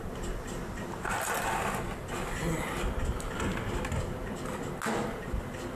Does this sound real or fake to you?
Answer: real